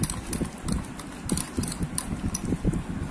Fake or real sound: real